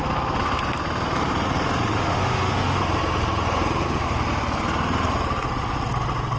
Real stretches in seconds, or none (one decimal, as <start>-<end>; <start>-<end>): 0.0-1.9; 2.8-6.4